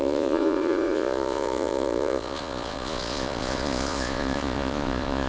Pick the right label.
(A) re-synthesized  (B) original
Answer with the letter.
A